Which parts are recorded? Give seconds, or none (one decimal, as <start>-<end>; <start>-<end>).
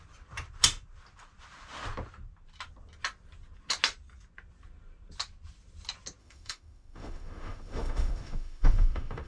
0.0-6.2